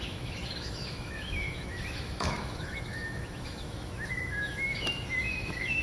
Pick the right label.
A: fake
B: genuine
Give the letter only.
A